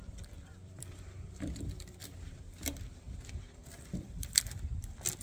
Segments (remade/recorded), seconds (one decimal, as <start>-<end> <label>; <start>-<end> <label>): 0.0-5.2 remade